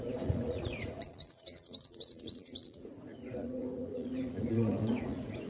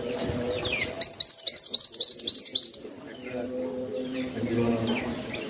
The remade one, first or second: first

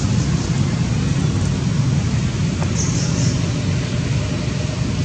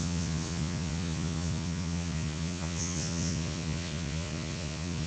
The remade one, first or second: second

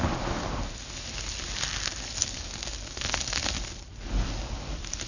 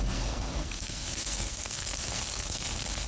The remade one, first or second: second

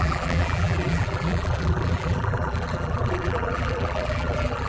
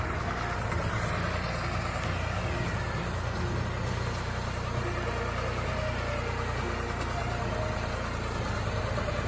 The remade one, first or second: first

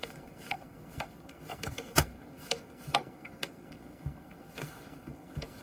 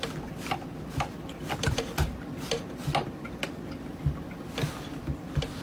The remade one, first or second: first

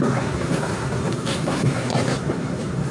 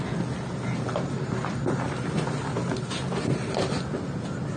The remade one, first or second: first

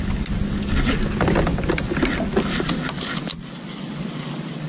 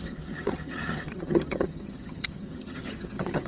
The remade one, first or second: second